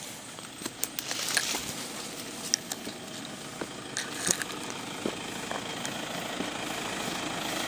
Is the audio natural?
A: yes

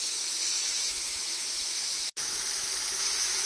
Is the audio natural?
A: no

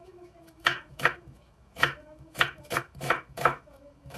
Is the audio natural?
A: no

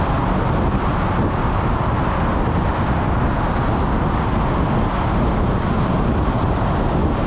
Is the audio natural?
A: yes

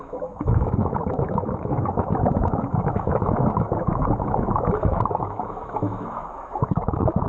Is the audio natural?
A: no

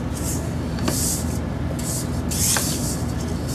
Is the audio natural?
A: yes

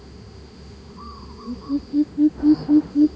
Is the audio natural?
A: no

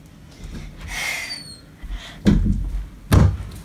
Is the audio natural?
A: yes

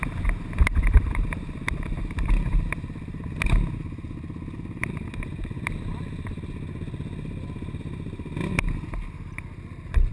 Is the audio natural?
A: yes